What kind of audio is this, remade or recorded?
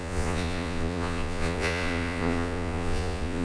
remade